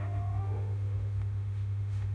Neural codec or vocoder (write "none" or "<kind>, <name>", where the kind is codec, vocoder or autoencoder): autoencoder, DAC-VAE